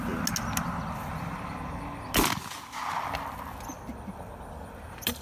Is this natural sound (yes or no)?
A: yes